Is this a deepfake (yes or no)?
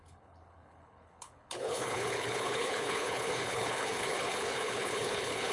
yes